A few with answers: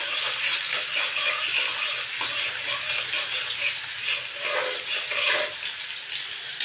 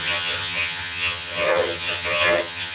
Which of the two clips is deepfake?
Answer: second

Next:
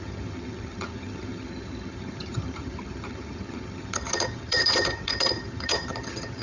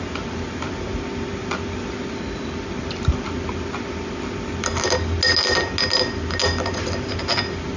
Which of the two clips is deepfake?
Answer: first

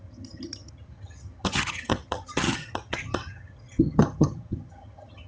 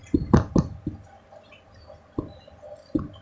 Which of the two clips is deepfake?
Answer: first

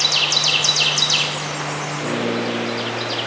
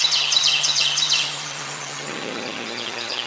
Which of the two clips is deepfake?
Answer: second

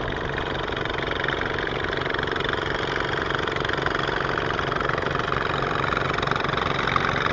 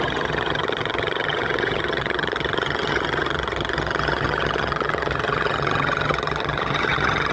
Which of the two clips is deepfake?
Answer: second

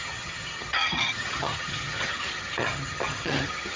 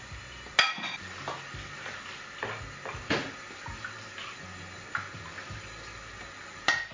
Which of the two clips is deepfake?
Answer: first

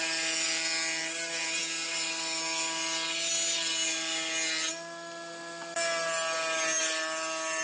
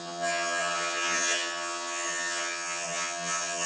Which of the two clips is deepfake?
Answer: second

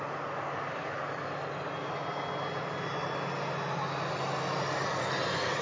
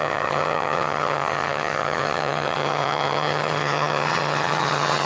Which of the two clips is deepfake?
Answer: second